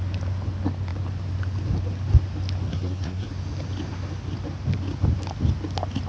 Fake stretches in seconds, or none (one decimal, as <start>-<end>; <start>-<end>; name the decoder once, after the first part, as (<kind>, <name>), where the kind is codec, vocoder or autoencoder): 2.7-3.3 (codec, SNAC)